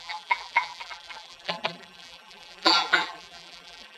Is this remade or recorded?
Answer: remade